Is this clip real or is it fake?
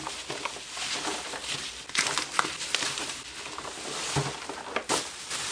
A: real